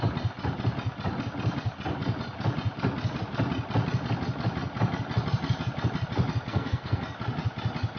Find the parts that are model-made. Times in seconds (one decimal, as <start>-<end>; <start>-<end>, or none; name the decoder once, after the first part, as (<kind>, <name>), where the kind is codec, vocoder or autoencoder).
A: 6.5-7.0 (codec, SNAC)